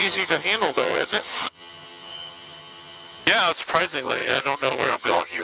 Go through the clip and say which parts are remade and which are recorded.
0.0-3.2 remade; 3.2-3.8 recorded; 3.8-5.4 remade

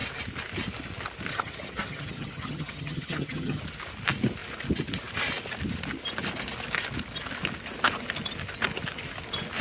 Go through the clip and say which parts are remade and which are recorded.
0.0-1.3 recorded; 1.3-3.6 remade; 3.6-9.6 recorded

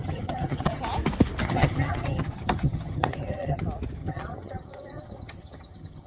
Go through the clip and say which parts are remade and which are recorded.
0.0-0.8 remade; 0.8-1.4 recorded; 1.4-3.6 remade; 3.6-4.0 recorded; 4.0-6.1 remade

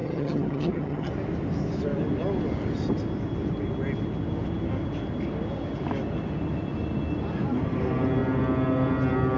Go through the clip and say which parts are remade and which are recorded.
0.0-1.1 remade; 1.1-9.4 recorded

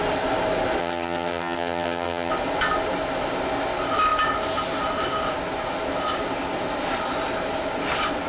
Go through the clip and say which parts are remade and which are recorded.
0.0-0.8 recorded; 0.8-2.3 remade; 2.3-8.3 recorded

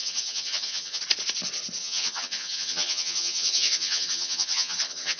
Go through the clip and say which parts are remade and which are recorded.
0.0-1.0 remade; 1.0-1.8 recorded; 1.8-5.2 remade